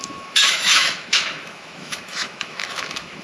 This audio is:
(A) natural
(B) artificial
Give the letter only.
B